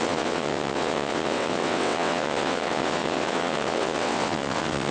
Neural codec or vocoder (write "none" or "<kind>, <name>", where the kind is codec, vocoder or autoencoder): vocoder, WaveNeXt